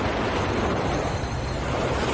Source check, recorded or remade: recorded